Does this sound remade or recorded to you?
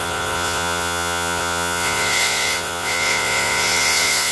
remade